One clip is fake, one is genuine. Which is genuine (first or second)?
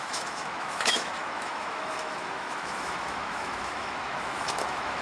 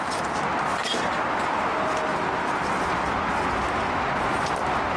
second